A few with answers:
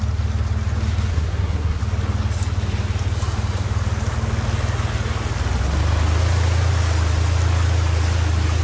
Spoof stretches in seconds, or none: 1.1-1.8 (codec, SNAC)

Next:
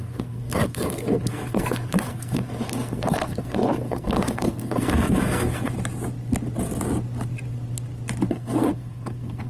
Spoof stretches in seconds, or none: 0.0-5.7 (codec, SNAC); 8.3-9.5

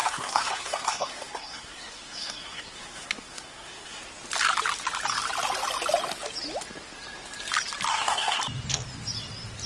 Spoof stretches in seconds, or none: 0.0-4.0 (codec, SNAC); 7.9-8.4